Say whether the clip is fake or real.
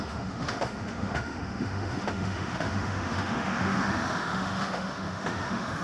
fake